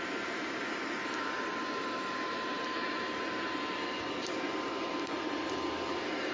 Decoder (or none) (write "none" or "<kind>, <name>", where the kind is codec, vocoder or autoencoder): vocoder, BigVGAN v2